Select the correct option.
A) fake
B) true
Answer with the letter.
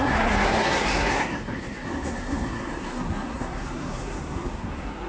A